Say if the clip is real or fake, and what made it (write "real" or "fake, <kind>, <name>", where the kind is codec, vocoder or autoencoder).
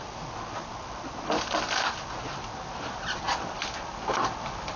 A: real